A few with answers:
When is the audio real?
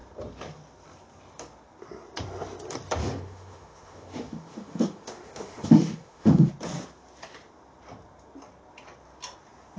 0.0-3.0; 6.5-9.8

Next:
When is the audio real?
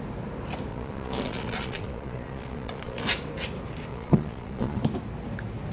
0.0-0.7; 3.0-3.9; 4.8-5.7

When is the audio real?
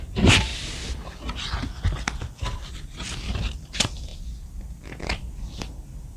0.5-2.7; 4.1-5.0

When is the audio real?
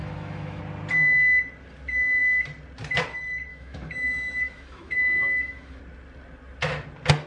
0.6-3.5; 5.8-7.3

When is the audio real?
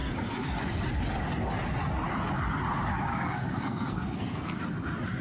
0.0-3.1; 4.6-5.2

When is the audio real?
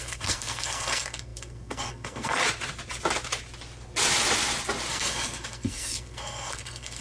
2.4-4.9